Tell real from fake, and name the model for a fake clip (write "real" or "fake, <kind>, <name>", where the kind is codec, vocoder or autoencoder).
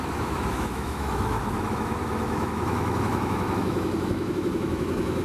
fake, autoencoder, DAC-VAE